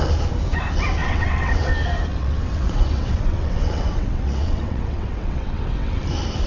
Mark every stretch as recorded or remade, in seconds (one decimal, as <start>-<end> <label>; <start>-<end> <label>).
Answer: 0.0-1.0 recorded; 1.0-1.7 remade; 1.7-2.1 recorded; 2.1-6.0 remade; 6.0-6.5 recorded